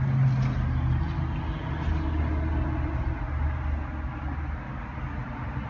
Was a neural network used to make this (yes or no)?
no